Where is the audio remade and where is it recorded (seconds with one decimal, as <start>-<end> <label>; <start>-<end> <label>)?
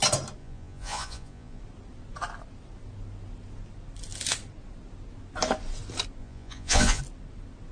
0.0-0.4 recorded; 0.4-1.6 remade; 1.6-6.2 recorded; 6.2-7.0 remade; 7.0-7.7 recorded